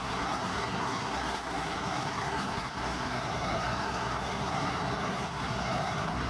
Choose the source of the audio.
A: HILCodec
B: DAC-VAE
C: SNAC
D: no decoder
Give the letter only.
C